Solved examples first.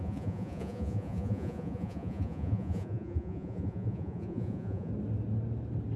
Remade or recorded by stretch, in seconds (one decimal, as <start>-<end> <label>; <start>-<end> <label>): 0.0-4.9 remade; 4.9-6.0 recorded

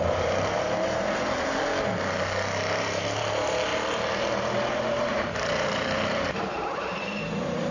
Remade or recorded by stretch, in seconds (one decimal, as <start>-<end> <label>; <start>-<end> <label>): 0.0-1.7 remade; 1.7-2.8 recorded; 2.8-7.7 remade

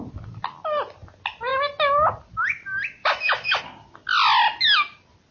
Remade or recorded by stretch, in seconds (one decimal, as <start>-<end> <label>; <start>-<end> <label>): 0.0-3.0 recorded; 3.0-3.6 remade; 3.6-5.3 recorded

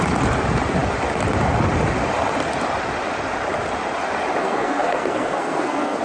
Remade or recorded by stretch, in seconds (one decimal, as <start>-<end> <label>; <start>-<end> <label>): 0.0-4.4 recorded; 4.4-6.0 remade

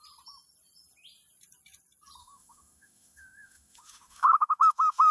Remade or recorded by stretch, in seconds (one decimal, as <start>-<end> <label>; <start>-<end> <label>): 0.0-2.2 recorded; 2.2-5.1 remade

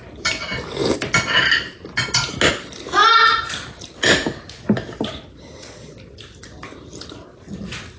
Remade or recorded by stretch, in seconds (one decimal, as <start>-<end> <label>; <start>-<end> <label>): 0.0-8.0 recorded

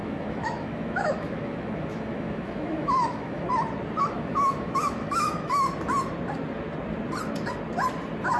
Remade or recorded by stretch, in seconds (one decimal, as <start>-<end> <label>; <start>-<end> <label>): 0.0-3.5 remade; 3.5-4.0 recorded; 4.0-5.6 remade; 5.6-8.4 recorded

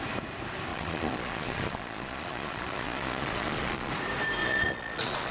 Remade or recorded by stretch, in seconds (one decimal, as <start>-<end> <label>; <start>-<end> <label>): 0.0-0.7 recorded; 0.7-3.9 remade; 3.9-4.4 recorded; 4.4-5.3 remade